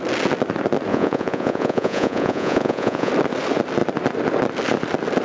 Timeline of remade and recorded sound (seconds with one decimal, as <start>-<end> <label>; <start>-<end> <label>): 0.0-0.9 recorded; 0.9-3.1 remade; 3.1-5.2 recorded